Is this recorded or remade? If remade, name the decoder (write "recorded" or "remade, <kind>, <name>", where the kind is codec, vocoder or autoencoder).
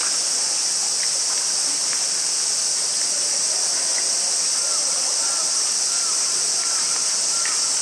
recorded